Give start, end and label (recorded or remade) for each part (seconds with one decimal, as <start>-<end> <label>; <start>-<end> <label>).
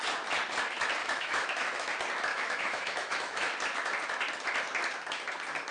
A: 0.0-1.0 recorded; 1.0-1.9 remade; 1.9-2.3 recorded; 2.3-3.5 remade; 3.5-5.7 recorded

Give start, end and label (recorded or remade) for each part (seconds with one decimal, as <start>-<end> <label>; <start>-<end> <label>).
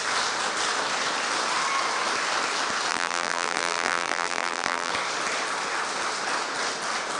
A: 0.0-2.9 recorded; 2.9-4.9 remade; 4.9-7.2 recorded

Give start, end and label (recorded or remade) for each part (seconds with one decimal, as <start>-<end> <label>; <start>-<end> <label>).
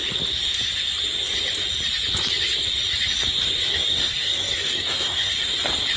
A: 0.0-3.7 recorded; 3.7-5.3 remade; 5.3-6.0 recorded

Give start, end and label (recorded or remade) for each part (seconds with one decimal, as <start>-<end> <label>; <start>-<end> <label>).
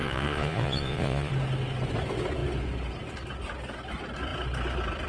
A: 0.0-1.3 remade; 1.3-5.1 recorded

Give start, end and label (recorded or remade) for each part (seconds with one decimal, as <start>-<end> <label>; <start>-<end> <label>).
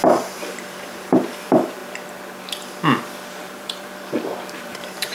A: 0.0-1.4 recorded; 1.4-1.8 remade; 1.8-3.4 recorded; 3.4-5.1 remade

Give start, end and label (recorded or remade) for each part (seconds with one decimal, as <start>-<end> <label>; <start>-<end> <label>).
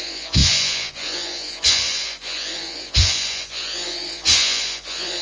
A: 0.0-5.2 remade